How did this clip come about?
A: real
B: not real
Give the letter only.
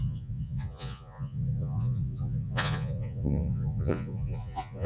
B